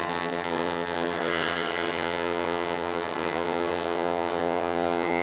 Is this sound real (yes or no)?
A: no